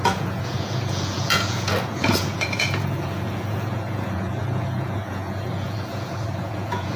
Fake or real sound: fake